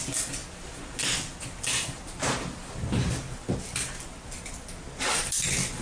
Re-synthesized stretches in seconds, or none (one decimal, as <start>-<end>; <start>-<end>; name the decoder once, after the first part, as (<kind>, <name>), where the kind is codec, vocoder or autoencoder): none